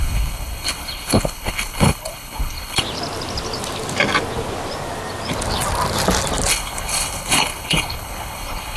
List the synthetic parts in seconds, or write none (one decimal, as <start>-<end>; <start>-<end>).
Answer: 0.0-2.8; 6.5-8.8